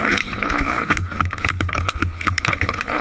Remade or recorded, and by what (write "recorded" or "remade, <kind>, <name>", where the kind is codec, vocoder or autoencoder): remade, codec, HILCodec